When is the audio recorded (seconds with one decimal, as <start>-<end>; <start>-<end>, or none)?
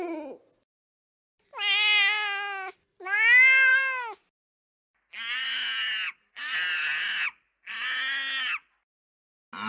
0.0-9.7